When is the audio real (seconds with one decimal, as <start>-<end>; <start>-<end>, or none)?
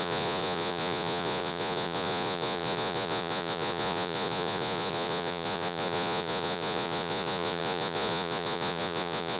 none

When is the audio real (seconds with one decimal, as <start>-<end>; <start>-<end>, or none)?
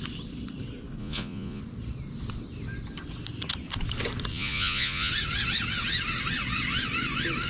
0.0-1.0; 1.6-4.3; 5.1-7.5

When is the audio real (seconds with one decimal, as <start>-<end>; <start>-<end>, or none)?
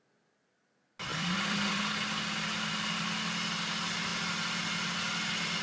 0.0-1.1; 1.8-5.6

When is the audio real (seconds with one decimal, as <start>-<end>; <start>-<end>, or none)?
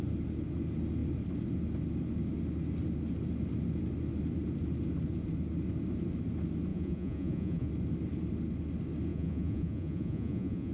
0.0-6.7; 7.7-9.1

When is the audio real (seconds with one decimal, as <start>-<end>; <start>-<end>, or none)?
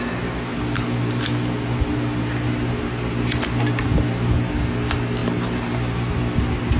0.0-6.8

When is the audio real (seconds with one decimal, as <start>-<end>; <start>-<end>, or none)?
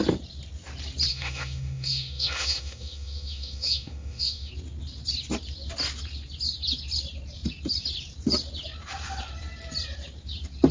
0.0-1.1; 4.5-10.7